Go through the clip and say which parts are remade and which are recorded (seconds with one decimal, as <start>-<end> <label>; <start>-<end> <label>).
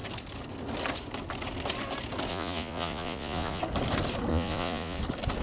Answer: 0.0-2.3 recorded; 2.3-3.6 remade; 3.6-4.3 recorded; 4.3-5.0 remade; 5.0-5.4 recorded